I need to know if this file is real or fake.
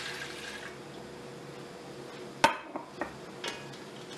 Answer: real